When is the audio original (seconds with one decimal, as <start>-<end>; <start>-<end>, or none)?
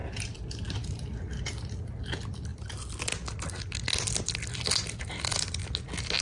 0.0-6.2